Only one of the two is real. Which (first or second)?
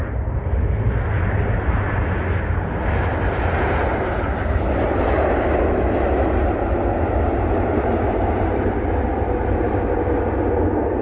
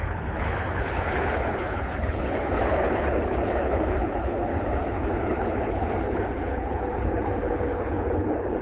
first